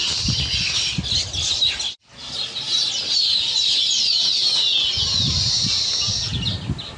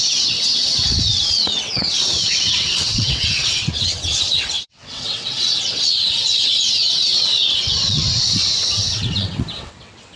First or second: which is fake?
second